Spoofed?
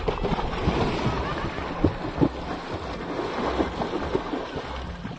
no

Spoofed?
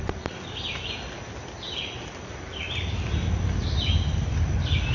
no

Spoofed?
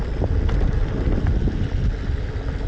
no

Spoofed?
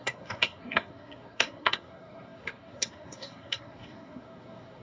yes